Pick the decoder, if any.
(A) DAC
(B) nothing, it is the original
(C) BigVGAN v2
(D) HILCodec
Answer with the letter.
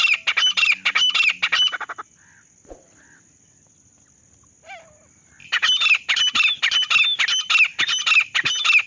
B